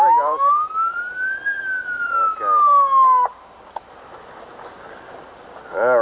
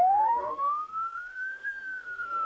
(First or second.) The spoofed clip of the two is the second